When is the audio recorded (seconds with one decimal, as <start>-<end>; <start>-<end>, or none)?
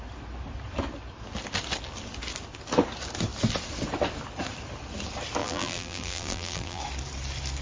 0.0-5.4; 6.8-7.6